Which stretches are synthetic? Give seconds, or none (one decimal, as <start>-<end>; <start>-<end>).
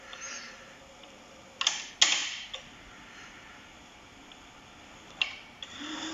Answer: none